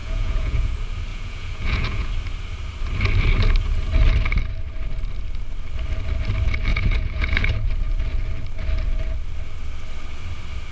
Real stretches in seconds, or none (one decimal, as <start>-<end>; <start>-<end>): 0.7-1.1; 2.1-6.7; 7.7-10.7